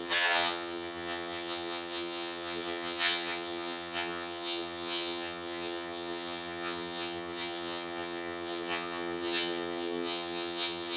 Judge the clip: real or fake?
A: fake